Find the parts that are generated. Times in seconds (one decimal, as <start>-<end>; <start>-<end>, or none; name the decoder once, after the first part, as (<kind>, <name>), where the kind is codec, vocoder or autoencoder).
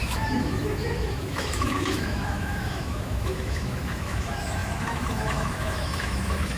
0.0-6.6 (autoencoder, DAC-VAE)